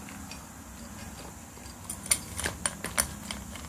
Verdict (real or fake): real